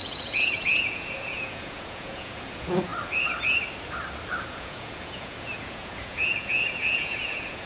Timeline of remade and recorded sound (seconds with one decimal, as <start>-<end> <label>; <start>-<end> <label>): 0.0-2.9 remade; 2.9-4.4 recorded; 4.4-7.7 remade